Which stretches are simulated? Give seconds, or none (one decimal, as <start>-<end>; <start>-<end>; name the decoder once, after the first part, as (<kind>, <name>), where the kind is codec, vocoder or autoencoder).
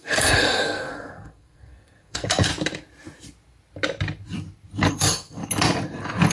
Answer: 0.0-2.5 (codec, SNAC); 4.9-5.4